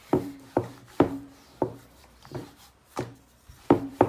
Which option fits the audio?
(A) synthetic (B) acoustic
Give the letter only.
A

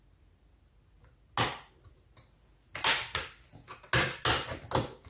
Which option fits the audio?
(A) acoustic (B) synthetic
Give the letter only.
A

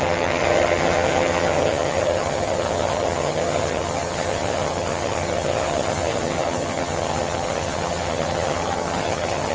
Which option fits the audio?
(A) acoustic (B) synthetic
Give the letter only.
B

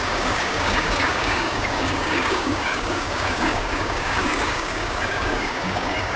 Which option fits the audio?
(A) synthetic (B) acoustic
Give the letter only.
A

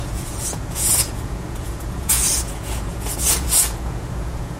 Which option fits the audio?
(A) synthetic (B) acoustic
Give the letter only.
A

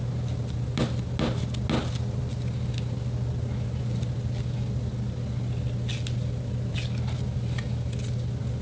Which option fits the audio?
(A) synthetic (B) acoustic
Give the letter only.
B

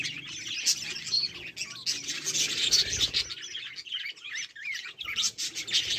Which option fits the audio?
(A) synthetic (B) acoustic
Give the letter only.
B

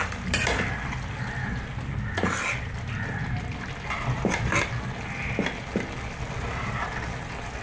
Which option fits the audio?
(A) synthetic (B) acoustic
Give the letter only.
B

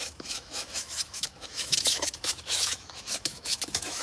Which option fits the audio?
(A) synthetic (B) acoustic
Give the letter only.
A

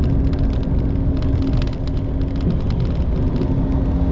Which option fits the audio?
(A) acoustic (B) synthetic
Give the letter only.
A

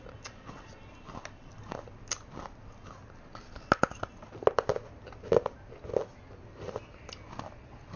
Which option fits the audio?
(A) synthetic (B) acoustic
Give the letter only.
B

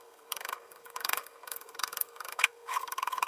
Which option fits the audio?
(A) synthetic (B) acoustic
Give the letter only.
A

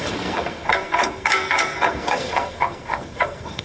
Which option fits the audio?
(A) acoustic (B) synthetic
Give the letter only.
B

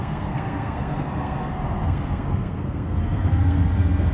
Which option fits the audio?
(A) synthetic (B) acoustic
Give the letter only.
A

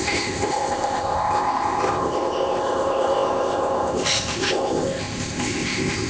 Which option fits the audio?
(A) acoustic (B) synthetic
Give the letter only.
B